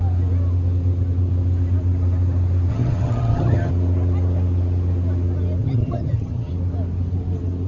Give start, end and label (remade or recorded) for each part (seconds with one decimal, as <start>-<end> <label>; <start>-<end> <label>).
0.0-2.7 recorded; 2.7-3.7 remade; 3.7-5.6 recorded; 5.6-6.5 remade; 6.5-7.7 recorded